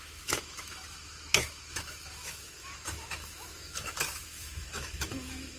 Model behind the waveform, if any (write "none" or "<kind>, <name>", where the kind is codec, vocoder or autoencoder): autoencoder, DAC-VAE